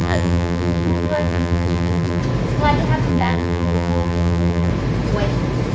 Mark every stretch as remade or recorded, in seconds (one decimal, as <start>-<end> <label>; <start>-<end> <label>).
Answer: 0.0-2.2 remade; 2.2-3.1 recorded; 3.1-4.7 remade; 4.7-5.7 recorded